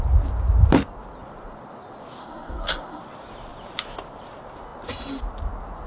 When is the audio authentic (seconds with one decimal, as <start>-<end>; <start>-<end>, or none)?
0.0-2.2; 3.0-5.9